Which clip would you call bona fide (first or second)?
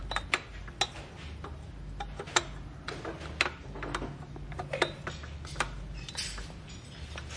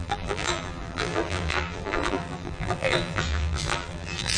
first